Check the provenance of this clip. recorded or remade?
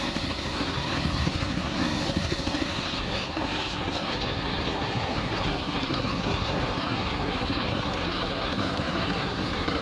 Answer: remade